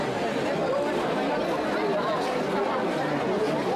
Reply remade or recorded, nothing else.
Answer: recorded